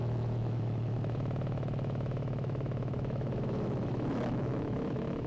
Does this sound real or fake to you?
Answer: fake